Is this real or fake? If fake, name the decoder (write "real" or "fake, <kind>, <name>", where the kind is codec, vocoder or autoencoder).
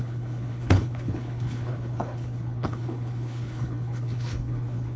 fake, codec, HILCodec